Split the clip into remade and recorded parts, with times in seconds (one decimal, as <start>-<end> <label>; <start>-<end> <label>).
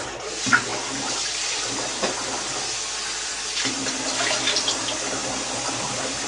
0.0-6.3 recorded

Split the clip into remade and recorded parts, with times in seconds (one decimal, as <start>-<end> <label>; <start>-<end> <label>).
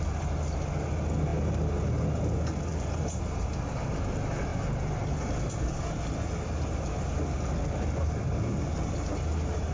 0.0-9.7 recorded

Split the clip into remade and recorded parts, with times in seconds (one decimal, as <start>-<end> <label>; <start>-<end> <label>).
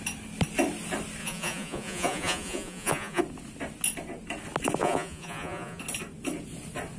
0.0-1.2 recorded; 1.2-3.2 remade; 3.2-4.8 recorded; 4.8-5.8 remade; 5.8-7.0 recorded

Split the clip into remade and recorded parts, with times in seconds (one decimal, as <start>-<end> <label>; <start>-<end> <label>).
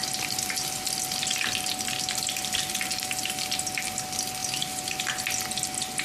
0.0-2.7 remade; 2.7-4.4 recorded; 4.4-5.0 remade; 5.0-6.0 recorded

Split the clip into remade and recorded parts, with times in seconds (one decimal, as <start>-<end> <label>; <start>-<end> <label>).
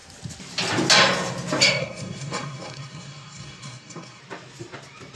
0.0-1.8 recorded; 1.8-4.2 remade; 4.2-5.2 recorded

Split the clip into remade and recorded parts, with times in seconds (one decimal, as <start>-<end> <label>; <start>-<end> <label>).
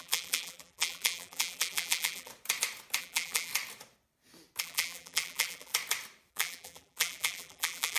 0.0-2.3 remade; 2.3-3.0 recorded; 3.0-3.5 remade; 3.5-4.6 recorded; 4.6-5.7 remade; 5.7-6.3 recorded; 6.3-8.0 remade